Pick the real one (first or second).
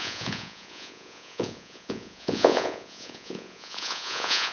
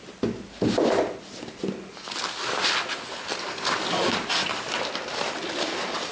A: second